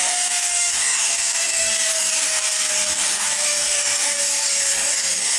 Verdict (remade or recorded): remade